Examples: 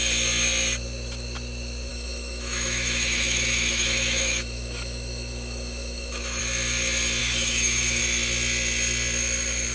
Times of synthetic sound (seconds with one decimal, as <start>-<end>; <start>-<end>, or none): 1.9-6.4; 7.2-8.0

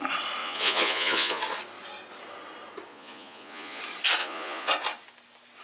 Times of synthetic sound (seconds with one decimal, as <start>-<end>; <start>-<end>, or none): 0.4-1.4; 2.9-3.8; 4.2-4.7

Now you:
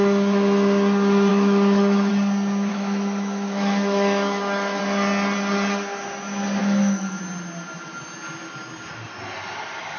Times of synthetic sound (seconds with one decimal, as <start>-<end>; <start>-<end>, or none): 1.3-2.1; 2.7-4.8; 6.6-7.2

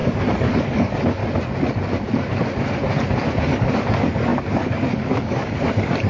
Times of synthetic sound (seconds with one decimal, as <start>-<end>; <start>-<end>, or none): 0.0-1.2; 3.4-6.1